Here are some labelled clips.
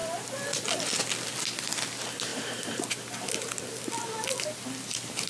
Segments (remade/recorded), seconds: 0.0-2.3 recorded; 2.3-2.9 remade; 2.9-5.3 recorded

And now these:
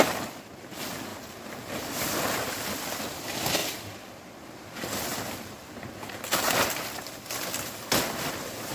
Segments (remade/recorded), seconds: 0.0-1.1 recorded; 1.1-3.0 remade; 3.0-3.6 recorded; 3.6-6.8 remade; 6.8-8.7 recorded

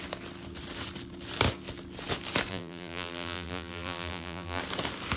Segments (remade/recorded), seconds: 0.0-2.5 recorded; 2.5-4.6 remade; 4.6-5.2 recorded

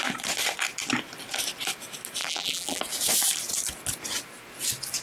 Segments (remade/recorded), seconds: 0.0-2.2 recorded; 2.2-2.8 remade; 2.8-5.0 recorded